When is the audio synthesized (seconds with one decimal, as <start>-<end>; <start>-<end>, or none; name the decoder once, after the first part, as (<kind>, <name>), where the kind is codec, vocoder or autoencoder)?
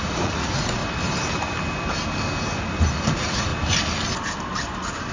0.0-0.8 (vocoder, Vocos); 3.1-3.5